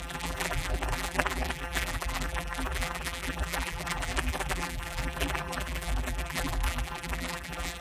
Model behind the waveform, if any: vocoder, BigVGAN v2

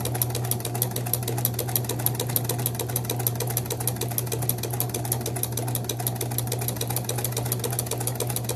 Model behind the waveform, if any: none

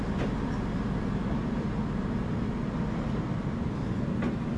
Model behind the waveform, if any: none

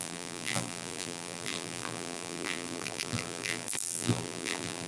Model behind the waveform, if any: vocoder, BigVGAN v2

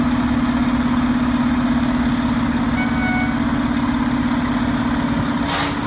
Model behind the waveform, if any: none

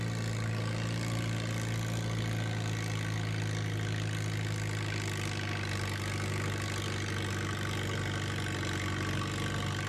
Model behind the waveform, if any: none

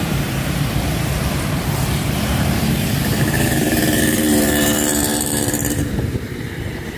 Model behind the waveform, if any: vocoder, BigVGAN v2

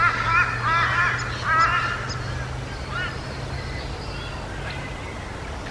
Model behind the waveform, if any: none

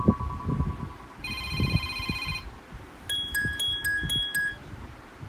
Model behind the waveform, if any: none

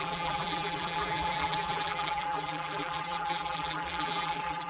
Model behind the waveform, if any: vocoder, BigVGAN v2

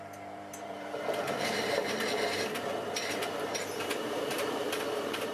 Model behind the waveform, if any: vocoder, BigVGAN v2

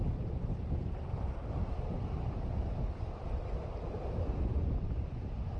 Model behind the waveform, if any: none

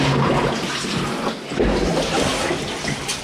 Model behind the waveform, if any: none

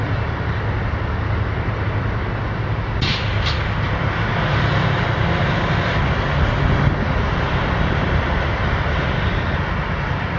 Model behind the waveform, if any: none